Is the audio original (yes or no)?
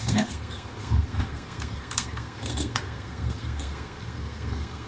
no